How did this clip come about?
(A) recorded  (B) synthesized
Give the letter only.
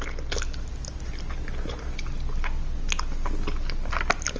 A